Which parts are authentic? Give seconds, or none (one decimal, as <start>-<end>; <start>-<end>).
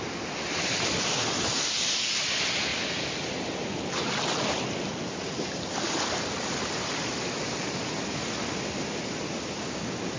0.0-10.2